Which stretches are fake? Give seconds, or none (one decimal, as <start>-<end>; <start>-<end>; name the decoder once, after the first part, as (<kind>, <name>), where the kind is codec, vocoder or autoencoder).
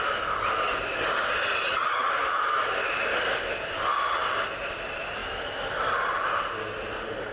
none